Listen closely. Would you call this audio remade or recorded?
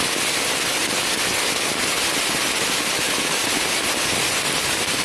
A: recorded